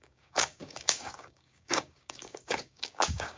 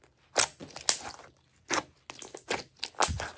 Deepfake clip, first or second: first